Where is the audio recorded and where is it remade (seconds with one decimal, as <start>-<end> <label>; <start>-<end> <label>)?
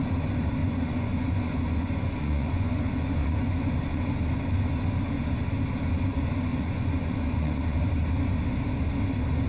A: 0.0-0.6 recorded; 0.6-2.8 remade; 2.8-3.2 recorded; 3.2-4.1 remade; 4.1-6.5 recorded; 6.5-7.9 remade; 7.9-9.5 recorded